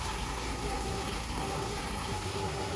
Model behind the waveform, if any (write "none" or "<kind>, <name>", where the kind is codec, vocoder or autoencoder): codec, SNAC